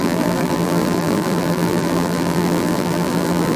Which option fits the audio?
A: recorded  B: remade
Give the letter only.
B